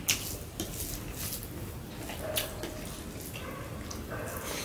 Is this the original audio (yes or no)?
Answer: yes